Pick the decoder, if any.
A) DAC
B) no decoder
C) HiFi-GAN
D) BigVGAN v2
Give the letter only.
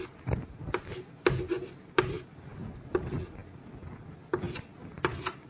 B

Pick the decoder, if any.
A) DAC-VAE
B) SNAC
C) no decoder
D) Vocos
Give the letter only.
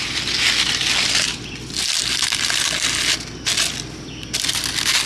C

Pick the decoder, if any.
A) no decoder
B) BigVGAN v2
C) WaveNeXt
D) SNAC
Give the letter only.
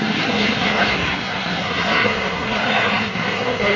D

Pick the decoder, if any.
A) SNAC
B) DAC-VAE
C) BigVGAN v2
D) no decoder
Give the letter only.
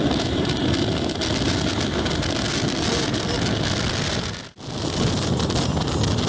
D